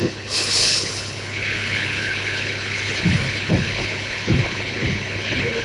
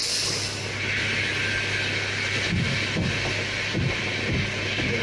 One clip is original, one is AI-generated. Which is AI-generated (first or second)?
first